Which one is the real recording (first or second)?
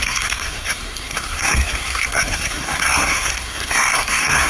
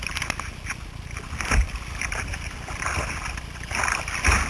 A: second